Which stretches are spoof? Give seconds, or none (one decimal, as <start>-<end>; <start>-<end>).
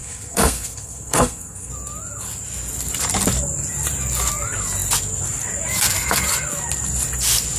0.0-1.7